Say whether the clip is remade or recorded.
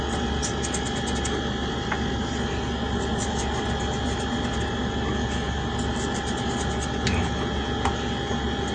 recorded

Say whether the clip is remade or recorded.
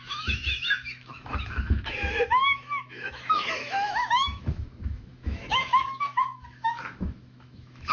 remade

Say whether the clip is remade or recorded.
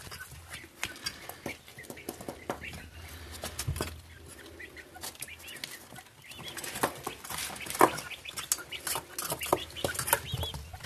recorded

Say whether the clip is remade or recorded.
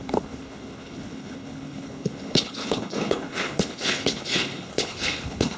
remade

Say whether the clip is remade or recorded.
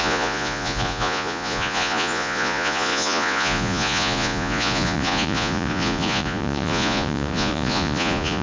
remade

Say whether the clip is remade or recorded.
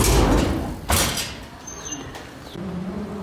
recorded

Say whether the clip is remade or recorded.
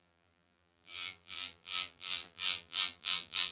remade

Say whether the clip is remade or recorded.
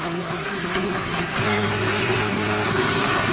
remade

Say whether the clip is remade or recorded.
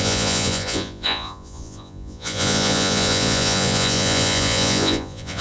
remade